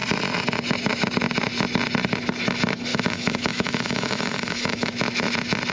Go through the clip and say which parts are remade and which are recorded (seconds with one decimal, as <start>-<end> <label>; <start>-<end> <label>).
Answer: 0.0-2.9 recorded; 2.9-5.3 remade; 5.3-5.7 recorded